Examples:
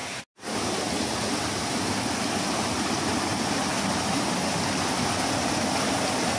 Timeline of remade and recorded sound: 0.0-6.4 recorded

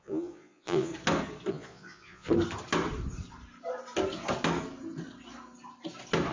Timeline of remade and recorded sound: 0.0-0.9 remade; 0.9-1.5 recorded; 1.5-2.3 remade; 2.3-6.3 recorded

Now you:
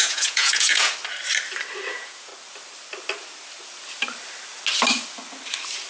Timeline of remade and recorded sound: 0.0-0.9 remade; 0.9-1.9 recorded; 1.9-2.3 remade; 2.3-5.9 recorded

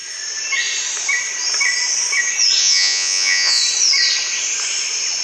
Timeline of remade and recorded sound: 0.0-2.6 recorded; 2.6-3.6 remade; 3.6-5.2 recorded

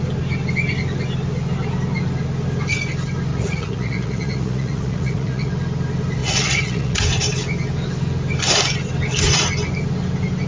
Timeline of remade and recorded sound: 0.0-3.3 recorded; 3.3-5.5 remade; 5.5-6.2 recorded; 6.2-7.0 remade; 7.0-10.5 recorded

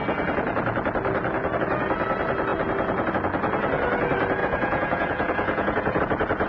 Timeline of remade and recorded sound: 0.0-4.4 recorded; 4.4-6.0 remade; 6.0-6.5 recorded